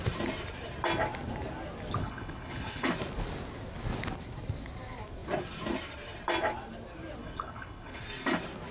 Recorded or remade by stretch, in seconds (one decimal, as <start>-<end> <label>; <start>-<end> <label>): 0.0-2.0 recorded; 2.0-2.9 remade; 2.9-7.2 recorded; 7.2-8.0 remade; 8.0-8.7 recorded